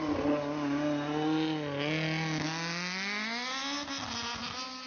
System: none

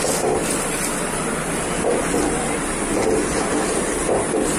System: none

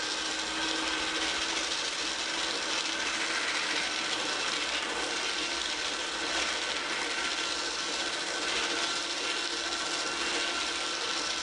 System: none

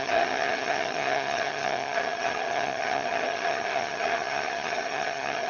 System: vocoder, HiFi-GAN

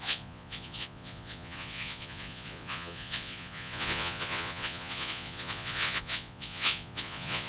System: vocoder, Vocos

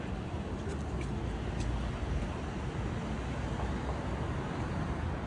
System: none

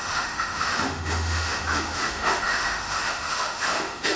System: autoencoder, DAC-VAE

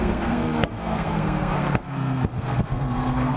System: codec, SNAC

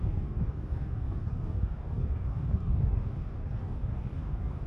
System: codec, DAC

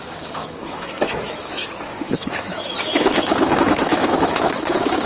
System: autoencoder, DAC-VAE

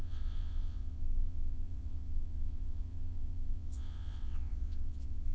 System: vocoder, WaveNeXt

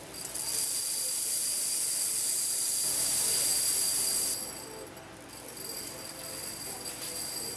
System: none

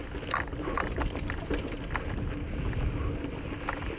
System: none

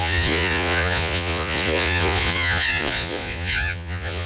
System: vocoder, Vocos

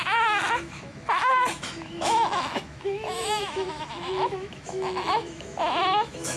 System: autoencoder, DAC-VAE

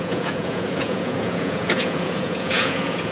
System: vocoder, Vocos